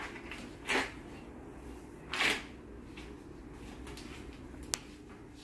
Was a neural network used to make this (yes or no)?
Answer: no